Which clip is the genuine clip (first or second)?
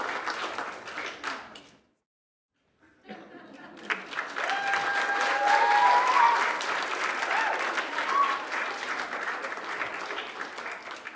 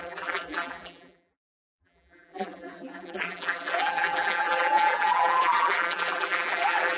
first